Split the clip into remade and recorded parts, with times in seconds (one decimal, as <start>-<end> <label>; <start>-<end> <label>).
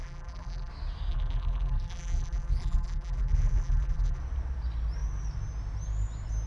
0.0-0.7 remade; 0.7-1.1 recorded; 1.1-4.2 remade; 4.2-6.5 recorded